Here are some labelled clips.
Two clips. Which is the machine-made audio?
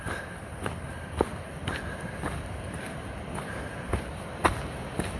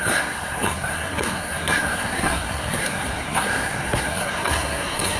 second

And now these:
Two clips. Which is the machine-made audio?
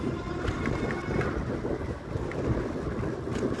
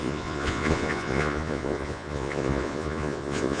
second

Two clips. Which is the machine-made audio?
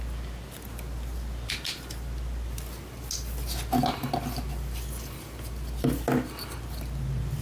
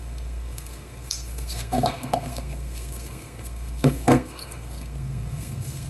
second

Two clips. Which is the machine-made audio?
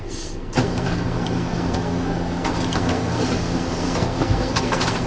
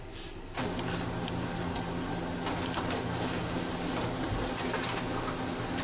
first